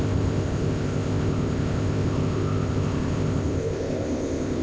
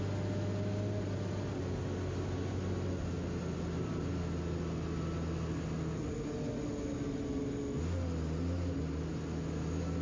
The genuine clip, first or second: second